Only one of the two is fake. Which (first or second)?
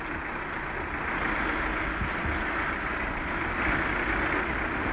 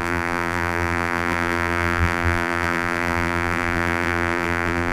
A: second